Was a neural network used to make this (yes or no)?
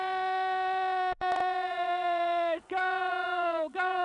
yes